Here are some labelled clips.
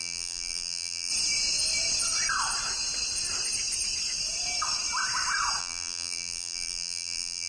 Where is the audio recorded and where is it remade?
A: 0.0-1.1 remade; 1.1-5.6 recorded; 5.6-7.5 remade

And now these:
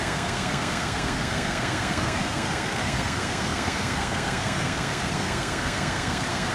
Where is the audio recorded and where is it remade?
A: 0.0-6.5 remade

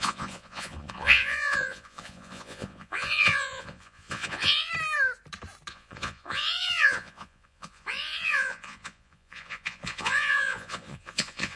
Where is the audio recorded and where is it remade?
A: 0.0-4.7 remade; 4.7-5.7 recorded; 5.7-11.6 remade

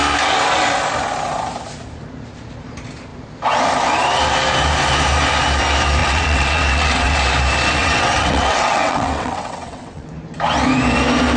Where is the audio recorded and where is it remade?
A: 0.0-6.0 recorded; 6.0-7.2 remade; 7.2-7.8 recorded; 7.8-10.1 remade; 10.1-11.4 recorded

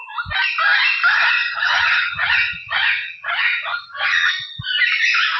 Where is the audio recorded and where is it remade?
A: 0.0-1.1 recorded; 1.1-4.3 remade; 4.3-5.4 recorded